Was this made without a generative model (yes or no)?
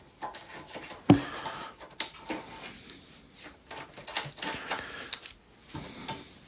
yes